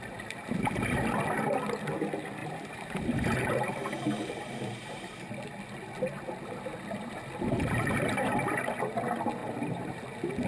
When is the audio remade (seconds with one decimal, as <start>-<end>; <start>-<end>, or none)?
2.4-5.2; 9.4-10.0